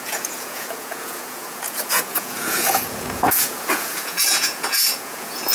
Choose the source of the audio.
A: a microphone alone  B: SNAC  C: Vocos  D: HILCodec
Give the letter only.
C